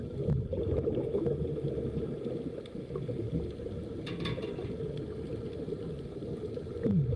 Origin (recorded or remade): recorded